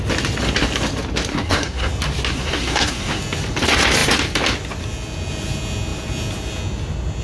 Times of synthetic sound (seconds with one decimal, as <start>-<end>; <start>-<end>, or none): 1.3-1.9; 2.3-3.2